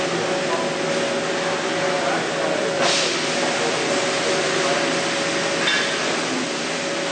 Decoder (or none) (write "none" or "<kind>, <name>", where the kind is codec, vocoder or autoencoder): none